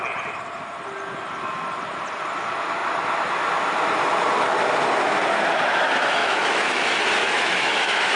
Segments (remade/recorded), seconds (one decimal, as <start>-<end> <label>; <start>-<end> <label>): 0.0-6.2 recorded; 6.2-6.8 remade; 6.8-7.2 recorded; 7.2-8.2 remade